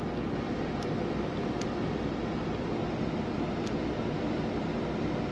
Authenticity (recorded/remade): recorded